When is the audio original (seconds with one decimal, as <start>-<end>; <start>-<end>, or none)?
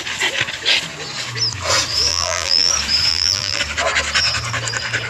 0.0-2.1; 2.7-3.1; 3.6-5.1